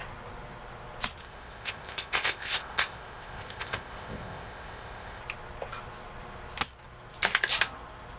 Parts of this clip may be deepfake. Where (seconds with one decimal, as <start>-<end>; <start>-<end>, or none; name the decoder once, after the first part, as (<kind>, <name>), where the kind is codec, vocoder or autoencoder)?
1.2-5.2 (codec, ZipCodec)